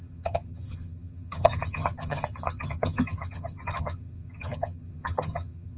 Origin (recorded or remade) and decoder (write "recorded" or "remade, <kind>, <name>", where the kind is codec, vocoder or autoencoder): remade, vocoder, HiFi-GAN